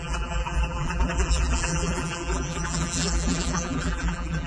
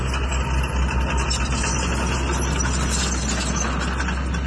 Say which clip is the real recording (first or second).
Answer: second